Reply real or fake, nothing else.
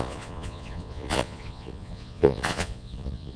fake